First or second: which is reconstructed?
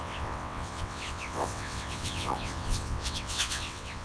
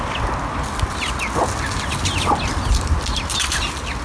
first